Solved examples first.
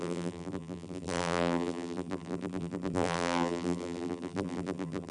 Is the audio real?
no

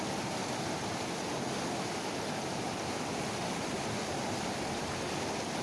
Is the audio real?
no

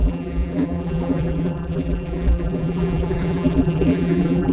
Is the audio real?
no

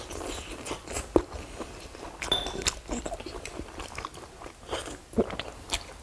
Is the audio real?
yes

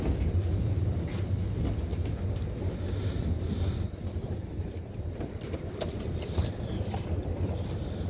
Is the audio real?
yes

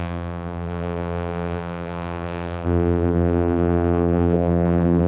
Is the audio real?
no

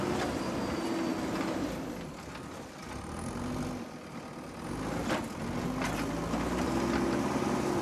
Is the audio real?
yes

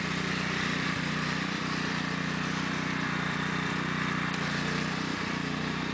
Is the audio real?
no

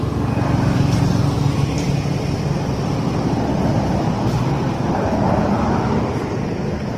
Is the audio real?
yes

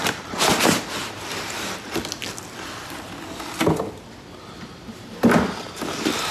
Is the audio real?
yes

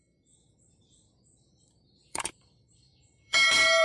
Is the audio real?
no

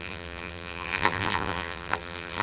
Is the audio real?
no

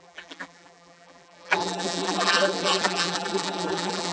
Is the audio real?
no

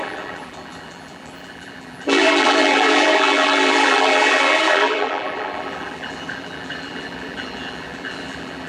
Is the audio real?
no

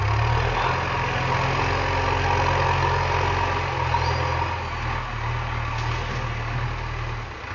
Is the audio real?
yes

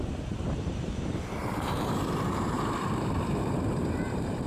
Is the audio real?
no